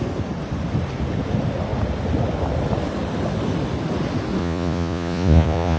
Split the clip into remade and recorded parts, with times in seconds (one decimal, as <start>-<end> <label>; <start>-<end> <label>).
0.0-4.4 recorded; 4.4-5.8 remade